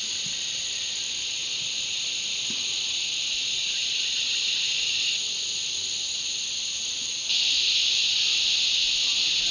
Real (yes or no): yes